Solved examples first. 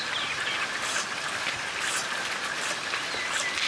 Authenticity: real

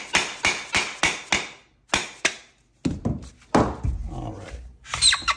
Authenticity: real